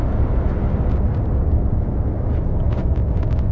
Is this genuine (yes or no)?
yes